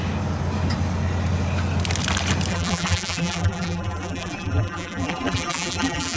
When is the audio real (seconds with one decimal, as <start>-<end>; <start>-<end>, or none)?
0.0-2.5